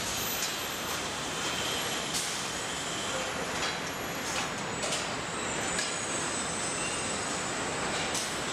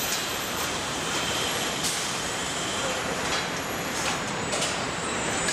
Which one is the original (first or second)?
first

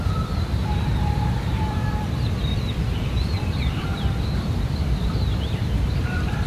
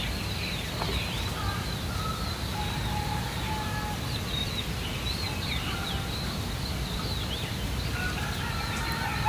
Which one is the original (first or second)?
second